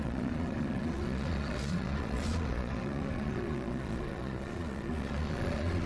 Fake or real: fake